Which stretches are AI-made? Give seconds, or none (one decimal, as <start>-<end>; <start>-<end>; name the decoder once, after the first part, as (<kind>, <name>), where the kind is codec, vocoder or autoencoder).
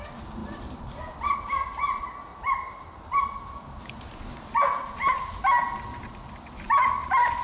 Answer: 0.4-1.4 (vocoder, BigVGAN v2); 2.3-3.2